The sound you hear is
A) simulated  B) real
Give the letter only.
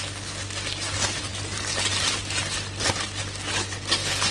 B